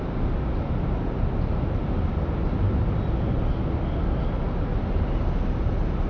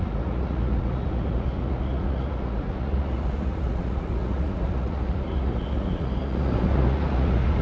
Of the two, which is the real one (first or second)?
first